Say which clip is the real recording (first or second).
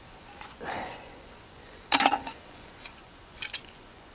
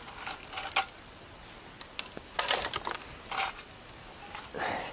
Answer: second